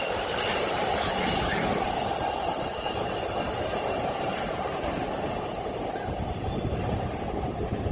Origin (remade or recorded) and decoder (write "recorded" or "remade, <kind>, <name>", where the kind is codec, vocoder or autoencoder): remade, vocoder, BigVGAN v2